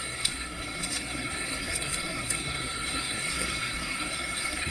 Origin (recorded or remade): remade